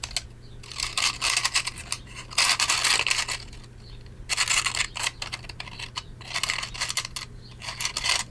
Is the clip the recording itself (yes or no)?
yes